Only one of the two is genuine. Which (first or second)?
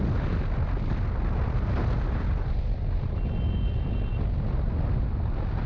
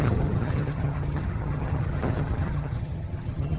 first